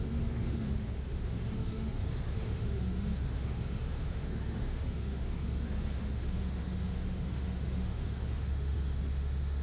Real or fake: fake